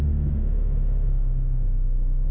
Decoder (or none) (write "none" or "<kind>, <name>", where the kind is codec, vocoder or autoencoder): autoencoder, DAC-VAE